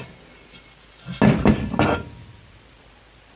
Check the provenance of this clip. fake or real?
real